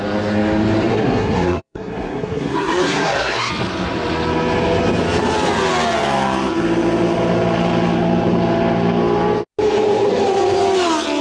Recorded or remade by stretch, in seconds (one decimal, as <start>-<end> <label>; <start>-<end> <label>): 0.0-0.9 recorded; 0.9-3.5 remade; 3.5-11.2 recorded